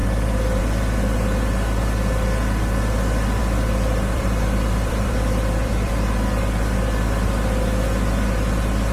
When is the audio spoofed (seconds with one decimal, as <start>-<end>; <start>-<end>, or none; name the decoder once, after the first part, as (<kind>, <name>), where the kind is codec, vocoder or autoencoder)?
3.4-5.9 (vocoder, BigVGAN v2)